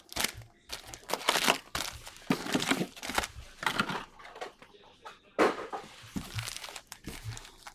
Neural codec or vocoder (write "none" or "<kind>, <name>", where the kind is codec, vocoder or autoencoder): none